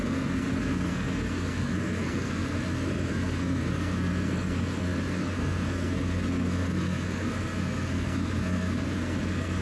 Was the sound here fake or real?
fake